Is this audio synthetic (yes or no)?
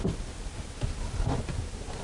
no